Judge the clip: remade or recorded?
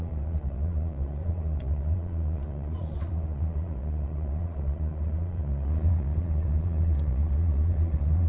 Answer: remade